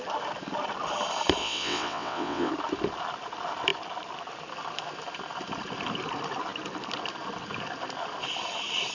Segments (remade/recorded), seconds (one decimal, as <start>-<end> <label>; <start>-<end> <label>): 0.0-1.4 recorded; 1.4-2.5 remade; 2.5-8.9 recorded